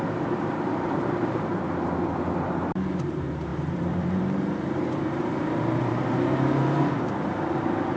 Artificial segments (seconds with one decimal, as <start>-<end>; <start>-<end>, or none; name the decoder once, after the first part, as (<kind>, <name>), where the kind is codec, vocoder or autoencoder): 0.0-8.0 (vocoder, BigVGAN v2)